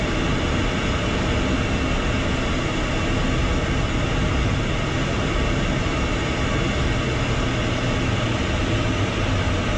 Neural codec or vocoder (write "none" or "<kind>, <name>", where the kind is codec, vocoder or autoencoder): none